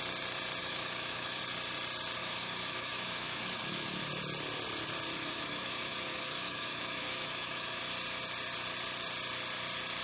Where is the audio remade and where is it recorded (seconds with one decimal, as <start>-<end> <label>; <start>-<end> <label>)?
0.0-0.6 recorded; 0.6-1.4 remade; 1.4-2.2 recorded; 2.2-4.0 remade; 4.0-5.2 recorded; 5.2-7.8 remade; 7.8-10.0 recorded